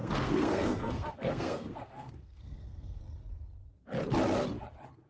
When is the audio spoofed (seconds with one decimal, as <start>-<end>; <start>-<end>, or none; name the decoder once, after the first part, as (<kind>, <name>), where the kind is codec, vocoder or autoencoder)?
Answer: 0.0-3.0 (codec, SNAC)